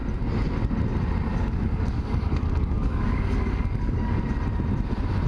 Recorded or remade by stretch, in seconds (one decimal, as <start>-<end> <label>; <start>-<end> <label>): 0.0-1.3 recorded; 1.3-4.3 remade; 4.3-5.3 recorded